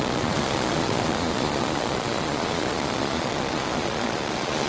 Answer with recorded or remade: remade